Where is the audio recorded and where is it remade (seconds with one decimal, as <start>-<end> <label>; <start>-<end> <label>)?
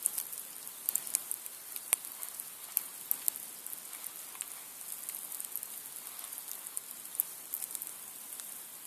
0.0-2.9 remade; 2.9-6.5 recorded; 6.5-8.9 remade